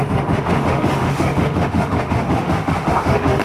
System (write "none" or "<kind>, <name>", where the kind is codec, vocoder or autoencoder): autoencoder, DAC-VAE